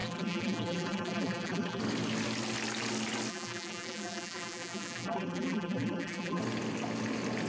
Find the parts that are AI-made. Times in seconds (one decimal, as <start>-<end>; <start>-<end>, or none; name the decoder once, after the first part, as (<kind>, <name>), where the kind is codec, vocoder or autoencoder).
0.0-1.8 (vocoder, BigVGAN v2); 3.3-6.4